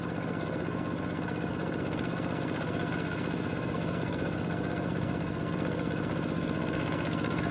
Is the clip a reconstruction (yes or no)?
yes